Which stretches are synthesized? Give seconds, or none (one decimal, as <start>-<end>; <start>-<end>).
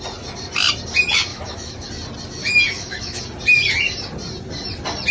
1.3-1.9; 2.4-3.2